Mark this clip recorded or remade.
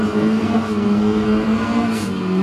remade